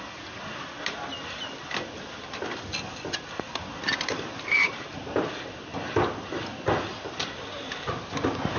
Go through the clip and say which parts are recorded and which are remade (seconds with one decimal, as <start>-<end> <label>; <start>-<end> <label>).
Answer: 0.0-8.6 recorded